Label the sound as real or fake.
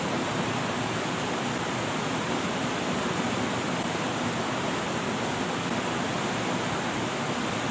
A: real